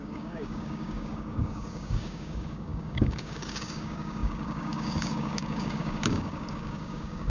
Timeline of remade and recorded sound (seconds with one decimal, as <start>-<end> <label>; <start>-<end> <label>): 0.0-7.3 remade